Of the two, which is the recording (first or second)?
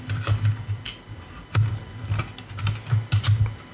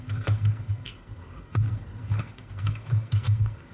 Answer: first